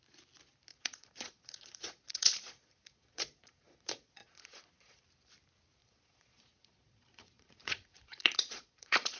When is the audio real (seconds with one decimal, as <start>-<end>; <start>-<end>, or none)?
0.0-0.7; 5.0-5.8